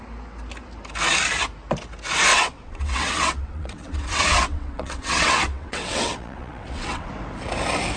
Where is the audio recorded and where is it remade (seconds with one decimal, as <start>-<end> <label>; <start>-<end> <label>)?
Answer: 0.0-2.3 recorded; 2.3-7.1 remade; 7.1-8.0 recorded